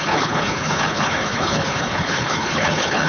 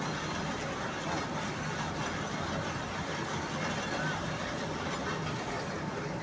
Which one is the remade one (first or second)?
first